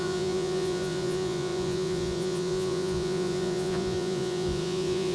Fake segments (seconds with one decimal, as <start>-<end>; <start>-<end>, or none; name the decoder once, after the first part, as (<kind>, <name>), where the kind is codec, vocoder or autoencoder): 0.0-5.1 (vocoder, Vocos)